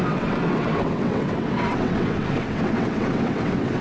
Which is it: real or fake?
fake